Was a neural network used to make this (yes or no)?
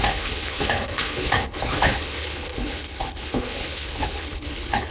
yes